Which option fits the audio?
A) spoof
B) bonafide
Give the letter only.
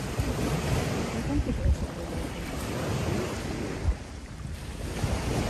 B